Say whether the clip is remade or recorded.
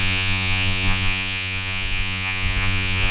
remade